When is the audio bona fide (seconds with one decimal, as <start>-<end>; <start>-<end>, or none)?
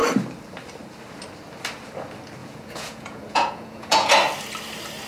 0.0-2.4; 4.1-5.1